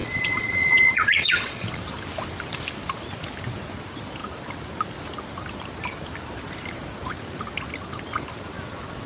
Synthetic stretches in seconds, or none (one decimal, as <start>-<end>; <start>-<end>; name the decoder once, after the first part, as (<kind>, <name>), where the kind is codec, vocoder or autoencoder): 0.0-1.8 (vocoder, Vocos)